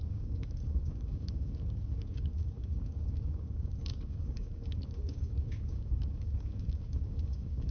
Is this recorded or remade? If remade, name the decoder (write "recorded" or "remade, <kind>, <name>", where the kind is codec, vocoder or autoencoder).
remade, codec, DAC